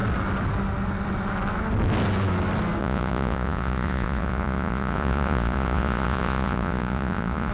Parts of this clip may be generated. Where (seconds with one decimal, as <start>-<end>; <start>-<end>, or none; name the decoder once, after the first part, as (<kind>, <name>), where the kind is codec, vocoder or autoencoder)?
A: 2.8-7.5 (vocoder, Vocos)